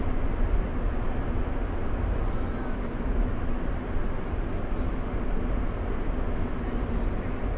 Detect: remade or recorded recorded